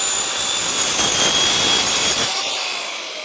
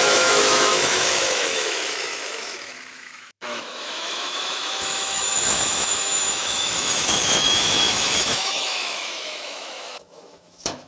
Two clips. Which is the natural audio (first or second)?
first